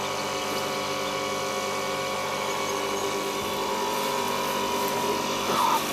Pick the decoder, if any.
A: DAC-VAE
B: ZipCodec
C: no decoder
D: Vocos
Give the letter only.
C